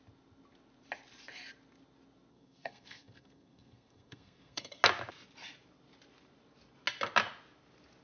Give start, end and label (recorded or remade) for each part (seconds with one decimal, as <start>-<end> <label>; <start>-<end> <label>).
0.0-2.3 recorded; 2.3-4.8 remade; 4.8-8.0 recorded